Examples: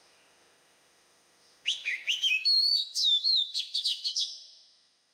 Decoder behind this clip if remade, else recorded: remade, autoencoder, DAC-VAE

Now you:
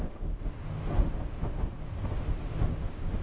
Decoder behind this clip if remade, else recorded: remade, autoencoder, DAC-VAE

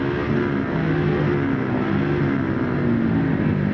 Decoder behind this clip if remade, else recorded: recorded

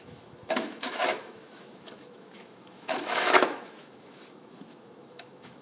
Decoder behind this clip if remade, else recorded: remade, autoencoder, DAC-VAE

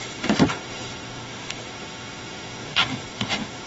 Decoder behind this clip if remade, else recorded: remade, autoencoder, DAC-VAE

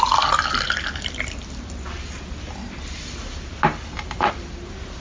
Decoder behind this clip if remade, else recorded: recorded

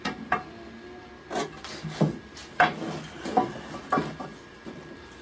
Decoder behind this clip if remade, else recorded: recorded